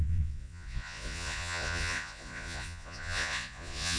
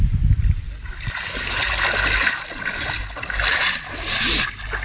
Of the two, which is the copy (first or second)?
first